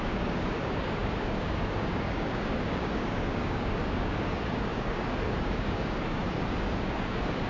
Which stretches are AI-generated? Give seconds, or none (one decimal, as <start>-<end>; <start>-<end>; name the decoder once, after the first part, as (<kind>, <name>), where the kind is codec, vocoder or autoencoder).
0.0-7.5 (codec, DAC)